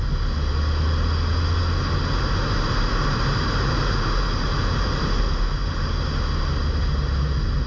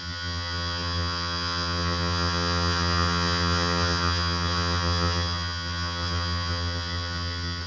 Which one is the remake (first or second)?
second